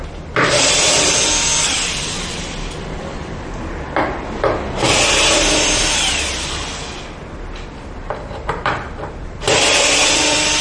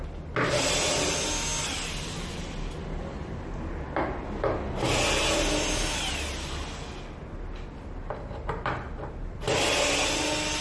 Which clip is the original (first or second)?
second